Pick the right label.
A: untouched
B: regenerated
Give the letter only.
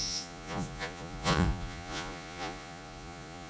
B